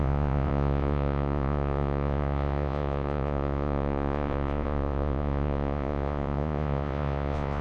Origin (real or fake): fake